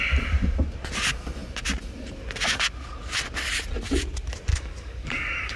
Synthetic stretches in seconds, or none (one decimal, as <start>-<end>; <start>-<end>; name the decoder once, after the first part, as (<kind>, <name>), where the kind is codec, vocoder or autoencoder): 4.5-5.6 (codec, DAC)